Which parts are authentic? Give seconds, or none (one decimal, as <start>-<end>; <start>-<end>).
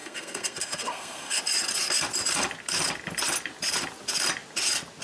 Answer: 1.4-5.0